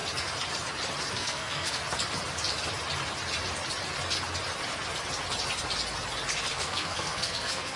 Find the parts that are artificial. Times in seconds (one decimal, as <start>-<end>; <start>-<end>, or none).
1.1-1.8; 6.5-7.8